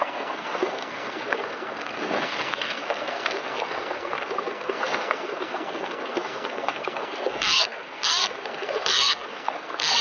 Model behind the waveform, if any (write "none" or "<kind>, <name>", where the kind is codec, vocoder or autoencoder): codec, SNAC